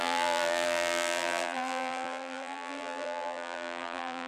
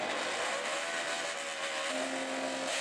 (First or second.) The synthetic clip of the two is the first